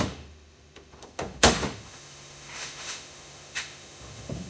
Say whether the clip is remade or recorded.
remade